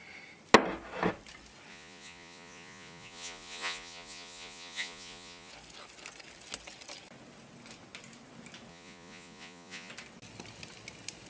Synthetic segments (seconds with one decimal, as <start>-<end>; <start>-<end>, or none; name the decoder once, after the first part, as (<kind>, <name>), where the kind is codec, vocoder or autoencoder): 1.7-5.5 (vocoder, Vocos); 8.7-9.9

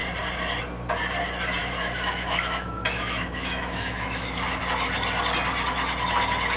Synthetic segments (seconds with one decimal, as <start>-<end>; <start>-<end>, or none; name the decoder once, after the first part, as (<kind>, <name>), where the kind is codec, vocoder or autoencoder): 1.6-4.6 (autoencoder, DAC-VAE)